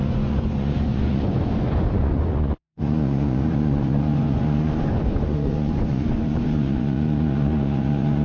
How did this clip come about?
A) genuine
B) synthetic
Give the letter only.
B